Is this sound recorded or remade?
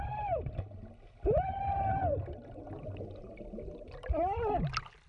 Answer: recorded